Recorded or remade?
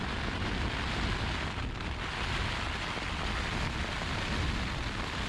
recorded